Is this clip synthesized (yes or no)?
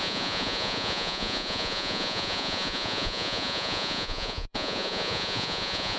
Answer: yes